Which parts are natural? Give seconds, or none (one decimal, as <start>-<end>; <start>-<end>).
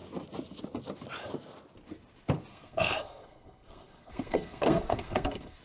0.0-2.5